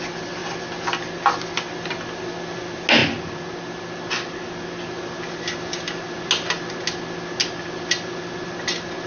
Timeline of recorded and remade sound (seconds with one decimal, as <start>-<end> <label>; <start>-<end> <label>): 0.0-9.1 recorded

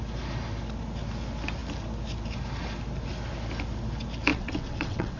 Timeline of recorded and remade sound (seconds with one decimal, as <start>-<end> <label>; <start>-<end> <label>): 0.0-4.3 recorded; 4.3-5.2 remade